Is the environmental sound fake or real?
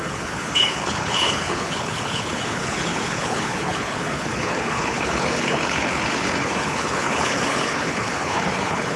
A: fake